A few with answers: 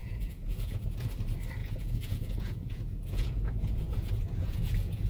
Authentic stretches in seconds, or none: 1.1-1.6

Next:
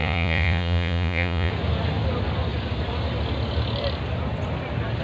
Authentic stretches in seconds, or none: 1.5-5.0

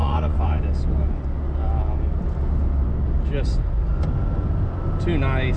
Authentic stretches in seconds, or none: 0.6-5.6

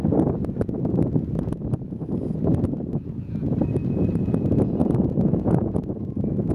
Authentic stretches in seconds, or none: 0.0-3.9

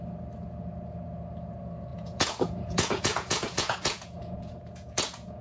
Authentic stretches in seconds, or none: 0.0-1.9

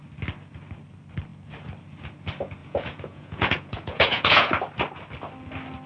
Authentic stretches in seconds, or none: 0.0-2.6; 4.5-5.9

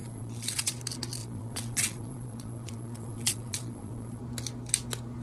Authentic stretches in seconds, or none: 0.7-1.2; 4.2-5.2

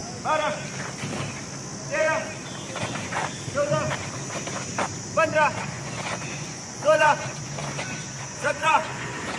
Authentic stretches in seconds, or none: 0.0-2.8; 3.2-5.6